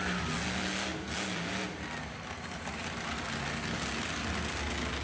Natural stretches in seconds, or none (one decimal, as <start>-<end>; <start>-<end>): 0.0-5.0